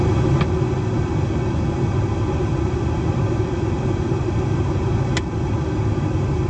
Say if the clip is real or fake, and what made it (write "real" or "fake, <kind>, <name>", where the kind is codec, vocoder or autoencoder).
real